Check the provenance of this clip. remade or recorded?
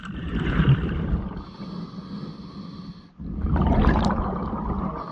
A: recorded